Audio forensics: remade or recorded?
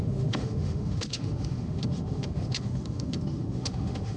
remade